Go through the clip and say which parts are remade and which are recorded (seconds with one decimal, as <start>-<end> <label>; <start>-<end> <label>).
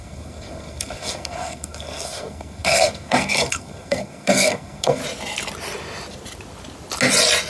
0.0-5.0 remade; 5.0-7.5 recorded